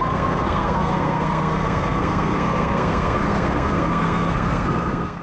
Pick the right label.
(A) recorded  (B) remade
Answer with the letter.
B